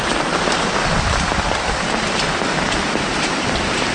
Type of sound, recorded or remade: remade